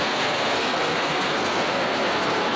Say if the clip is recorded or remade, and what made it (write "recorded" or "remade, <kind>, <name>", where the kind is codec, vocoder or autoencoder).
remade, codec, SNAC